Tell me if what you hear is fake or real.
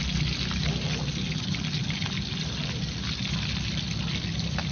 real